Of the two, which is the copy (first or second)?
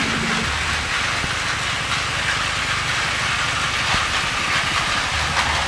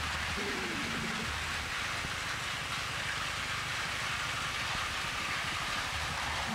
second